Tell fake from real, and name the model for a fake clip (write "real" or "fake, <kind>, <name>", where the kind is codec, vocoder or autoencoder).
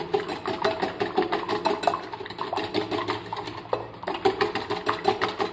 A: real